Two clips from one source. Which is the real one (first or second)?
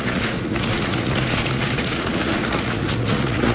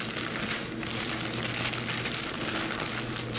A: second